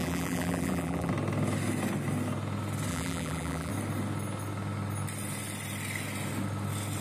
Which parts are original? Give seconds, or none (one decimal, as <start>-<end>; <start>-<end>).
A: 1.1-2.9; 3.7-7.0